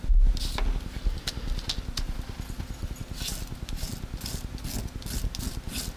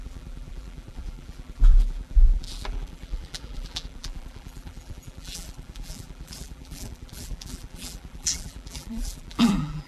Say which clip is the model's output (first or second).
second